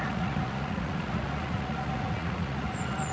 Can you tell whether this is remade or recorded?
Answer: remade